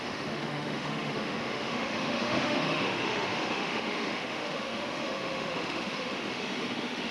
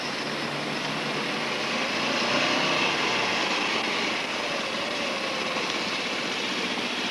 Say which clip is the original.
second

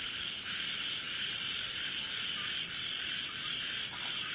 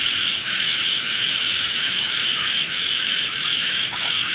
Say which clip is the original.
first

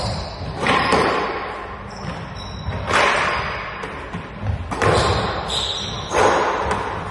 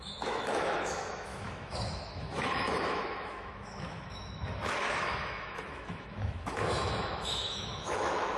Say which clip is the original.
first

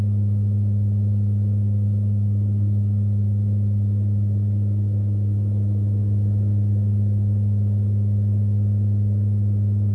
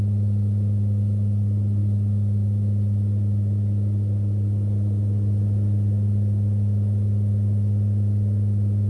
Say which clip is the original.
second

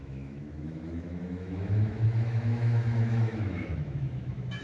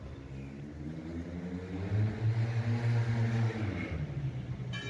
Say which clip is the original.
second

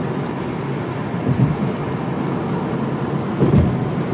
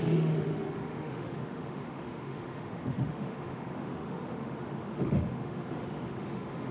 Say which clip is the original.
first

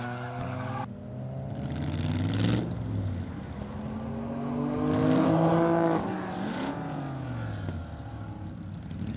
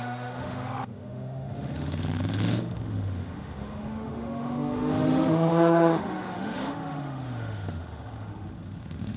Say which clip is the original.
first